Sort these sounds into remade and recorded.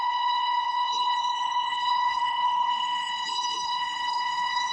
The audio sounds remade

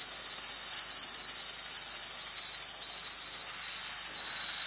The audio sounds recorded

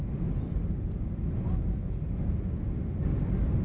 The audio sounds recorded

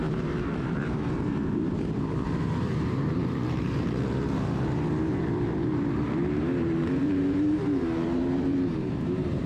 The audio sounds remade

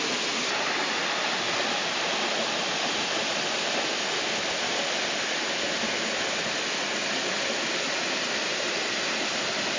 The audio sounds recorded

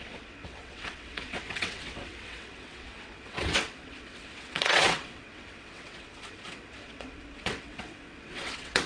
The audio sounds remade